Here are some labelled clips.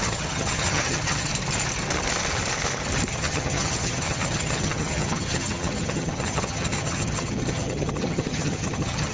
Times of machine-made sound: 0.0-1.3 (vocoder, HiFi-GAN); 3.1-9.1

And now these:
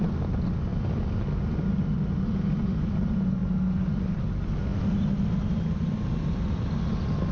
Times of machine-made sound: none

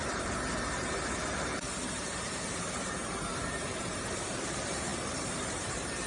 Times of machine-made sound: 0.0-3.3 (vocoder, BigVGAN v2); 3.8-6.1